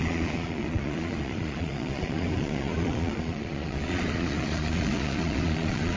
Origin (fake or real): fake